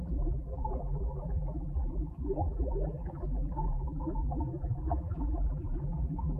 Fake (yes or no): yes